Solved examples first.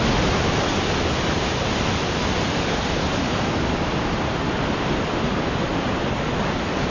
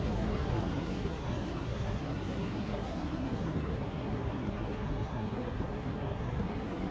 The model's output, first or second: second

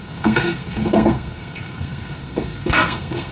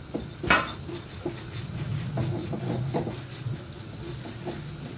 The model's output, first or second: first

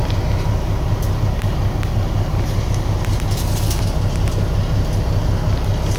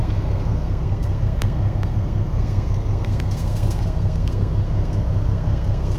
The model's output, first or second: second